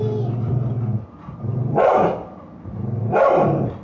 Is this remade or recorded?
recorded